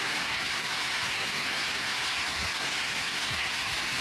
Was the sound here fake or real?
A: fake